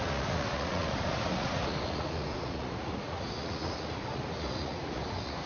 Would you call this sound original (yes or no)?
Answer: no